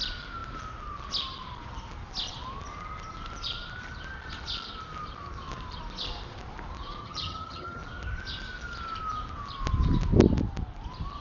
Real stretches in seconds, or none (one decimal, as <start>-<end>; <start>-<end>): 0.0-7.0; 7.8-11.2